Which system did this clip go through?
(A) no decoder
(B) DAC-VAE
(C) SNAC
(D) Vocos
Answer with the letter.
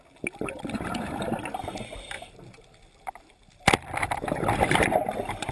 A